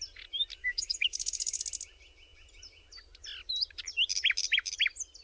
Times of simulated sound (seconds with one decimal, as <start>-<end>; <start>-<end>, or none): 0.6-1.6